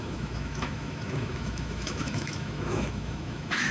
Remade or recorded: remade